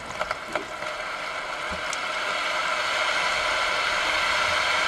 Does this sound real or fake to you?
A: real